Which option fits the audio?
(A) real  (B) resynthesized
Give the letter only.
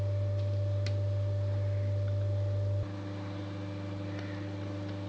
A